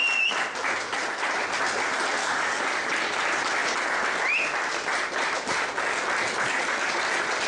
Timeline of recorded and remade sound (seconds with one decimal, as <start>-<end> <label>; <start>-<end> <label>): 0.0-2.2 recorded; 2.2-2.9 remade; 2.9-7.5 recorded